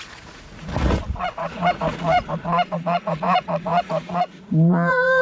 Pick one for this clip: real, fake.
fake